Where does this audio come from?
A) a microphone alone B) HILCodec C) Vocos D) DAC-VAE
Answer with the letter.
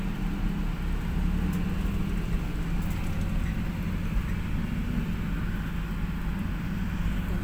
A